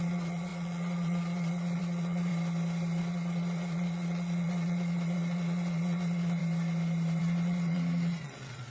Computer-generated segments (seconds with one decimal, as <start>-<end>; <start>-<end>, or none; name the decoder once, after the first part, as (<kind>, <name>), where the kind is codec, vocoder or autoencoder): 0.0-2.3 (vocoder, Vocos); 3.0-6.4; 7.2-8.7